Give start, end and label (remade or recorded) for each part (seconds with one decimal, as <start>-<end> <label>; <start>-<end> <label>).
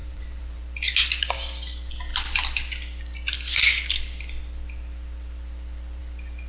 0.0-0.6 remade; 0.6-6.5 recorded